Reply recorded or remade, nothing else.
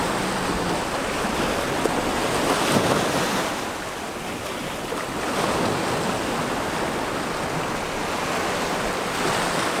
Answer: recorded